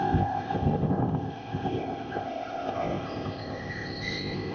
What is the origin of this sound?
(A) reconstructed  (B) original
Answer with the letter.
A